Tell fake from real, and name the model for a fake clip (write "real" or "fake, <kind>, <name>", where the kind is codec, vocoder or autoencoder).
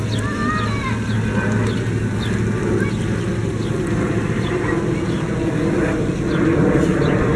real